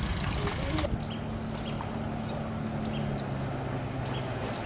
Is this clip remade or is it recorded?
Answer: recorded